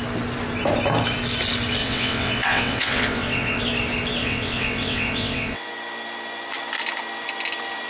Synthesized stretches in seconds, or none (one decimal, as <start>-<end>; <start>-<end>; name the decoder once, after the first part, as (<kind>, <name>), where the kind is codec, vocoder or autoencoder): 1.8-3.6 (vocoder, WaveNeXt); 4.2-5.7